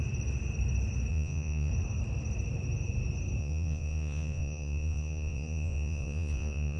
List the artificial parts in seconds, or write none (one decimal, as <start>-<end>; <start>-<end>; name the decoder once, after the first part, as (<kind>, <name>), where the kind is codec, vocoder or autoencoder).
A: 1.1-1.7 (vocoder, Vocos); 3.4-6.8